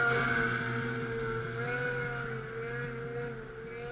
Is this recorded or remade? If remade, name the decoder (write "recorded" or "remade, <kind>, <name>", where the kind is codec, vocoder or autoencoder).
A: recorded